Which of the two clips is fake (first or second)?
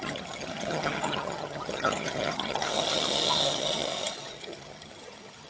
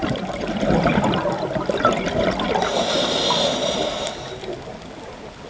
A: first